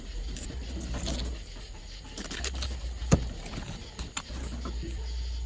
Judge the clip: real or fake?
real